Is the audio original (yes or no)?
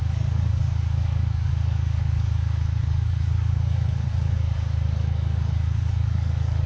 no